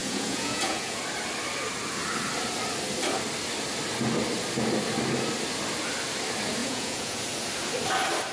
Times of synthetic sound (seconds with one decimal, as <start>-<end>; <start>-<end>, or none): 0.0-1.0; 6.6-7.2

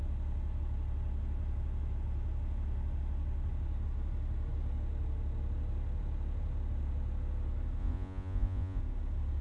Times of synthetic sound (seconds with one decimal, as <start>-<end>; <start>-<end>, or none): 7.8-8.8

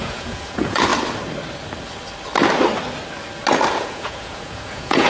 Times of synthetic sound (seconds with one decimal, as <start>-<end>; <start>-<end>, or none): 0.0-0.9; 3.7-5.1